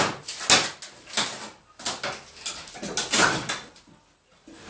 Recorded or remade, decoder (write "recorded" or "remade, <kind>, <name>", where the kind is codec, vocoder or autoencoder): recorded